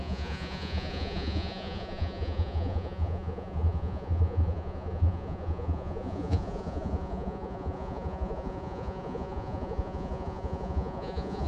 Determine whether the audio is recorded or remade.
remade